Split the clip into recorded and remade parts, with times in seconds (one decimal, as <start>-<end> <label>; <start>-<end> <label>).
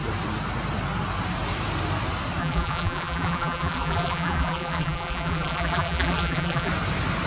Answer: 0.0-2.4 recorded; 2.4-6.7 remade; 6.7-7.3 recorded